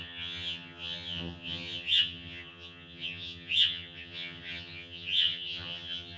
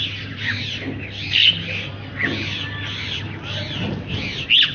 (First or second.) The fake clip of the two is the first